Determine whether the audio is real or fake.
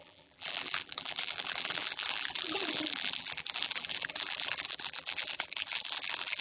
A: fake